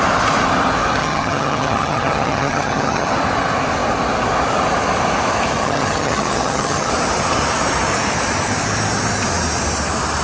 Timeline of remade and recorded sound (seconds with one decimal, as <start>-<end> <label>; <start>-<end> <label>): 0.0-1.0 recorded; 1.0-3.1 remade; 3.1-5.6 recorded; 5.6-6.9 remade; 6.9-10.2 recorded